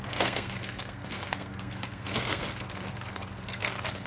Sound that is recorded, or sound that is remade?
remade